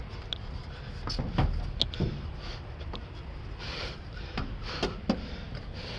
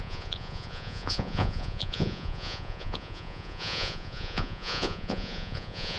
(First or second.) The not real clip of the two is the second